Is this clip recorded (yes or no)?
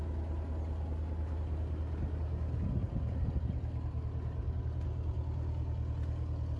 yes